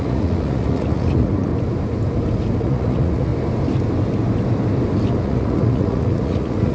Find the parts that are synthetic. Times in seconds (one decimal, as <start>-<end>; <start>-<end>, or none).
0.0-1.5; 2.6-3.3; 5.2-6.7